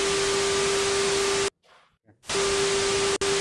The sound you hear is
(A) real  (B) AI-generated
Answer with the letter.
A